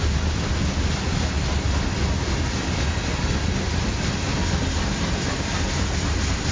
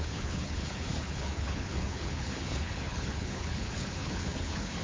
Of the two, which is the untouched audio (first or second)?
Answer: first